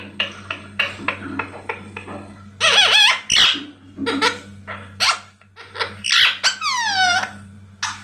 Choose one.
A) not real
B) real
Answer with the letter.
B